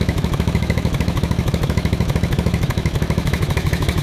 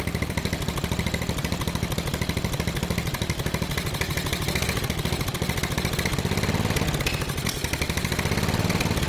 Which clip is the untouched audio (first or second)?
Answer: second